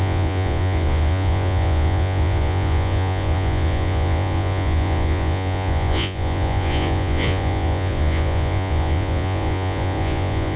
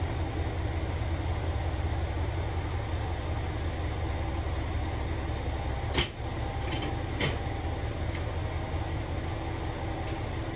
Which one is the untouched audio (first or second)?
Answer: second